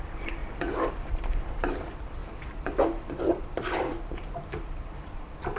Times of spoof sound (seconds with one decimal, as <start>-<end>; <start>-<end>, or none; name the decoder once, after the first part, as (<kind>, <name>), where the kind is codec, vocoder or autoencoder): 0.0-0.4 (vocoder, BigVGAN v2); 0.9-2.2; 3.3-5.6